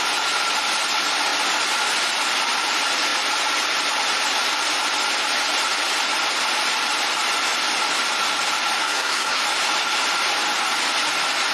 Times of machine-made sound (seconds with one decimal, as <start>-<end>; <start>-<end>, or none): 8.8-9.4